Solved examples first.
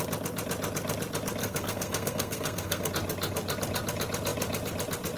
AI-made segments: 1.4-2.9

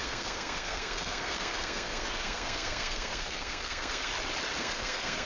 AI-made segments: 0.0-4.1; 4.6-5.3

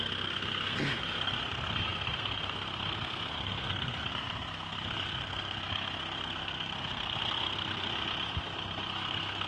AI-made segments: 0.0-7.9; 8.9-9.5